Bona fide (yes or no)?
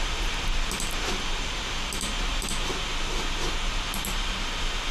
yes